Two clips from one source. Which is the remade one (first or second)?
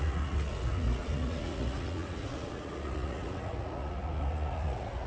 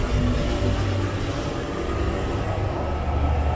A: first